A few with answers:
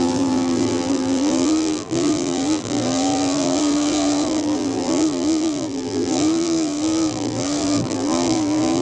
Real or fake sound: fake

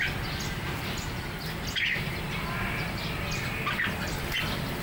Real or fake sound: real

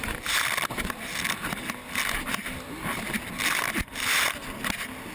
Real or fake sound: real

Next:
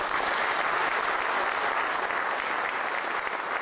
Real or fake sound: real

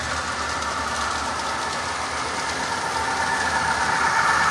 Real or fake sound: real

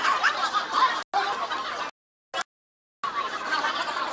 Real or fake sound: real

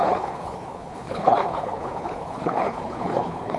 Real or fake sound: fake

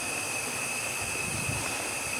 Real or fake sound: real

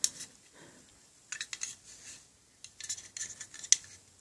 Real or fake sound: real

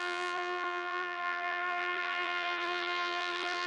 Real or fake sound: fake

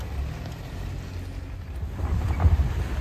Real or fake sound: real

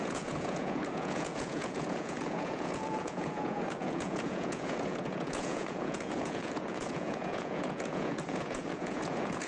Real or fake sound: fake